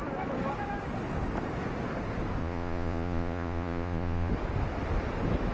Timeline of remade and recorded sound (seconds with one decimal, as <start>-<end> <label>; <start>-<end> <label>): 0.0-2.4 recorded; 2.4-4.3 remade; 4.3-5.5 recorded